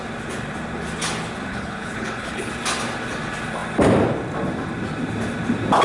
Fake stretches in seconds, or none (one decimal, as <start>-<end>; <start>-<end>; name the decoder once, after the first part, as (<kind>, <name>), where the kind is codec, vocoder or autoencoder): 1.5-2.5 (codec, HILCodec)